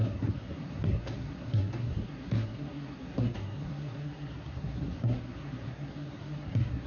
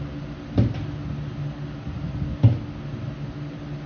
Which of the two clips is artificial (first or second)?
first